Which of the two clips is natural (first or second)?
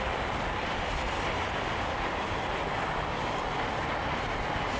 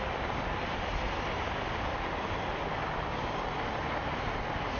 second